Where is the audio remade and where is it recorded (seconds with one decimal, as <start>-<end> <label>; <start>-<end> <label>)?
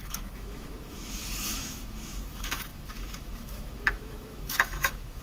0.0-5.2 remade